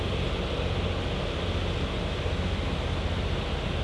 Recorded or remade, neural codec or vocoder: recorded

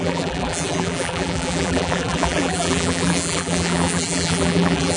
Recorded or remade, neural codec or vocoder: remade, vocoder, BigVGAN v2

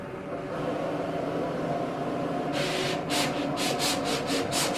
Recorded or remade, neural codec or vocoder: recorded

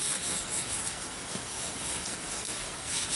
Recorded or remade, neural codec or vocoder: remade, codec, SNAC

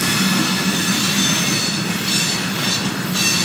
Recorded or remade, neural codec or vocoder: recorded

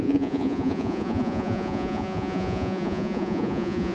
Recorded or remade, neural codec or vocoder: remade, vocoder, Vocos